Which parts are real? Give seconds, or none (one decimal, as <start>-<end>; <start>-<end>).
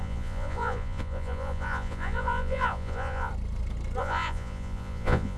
3.3-4.0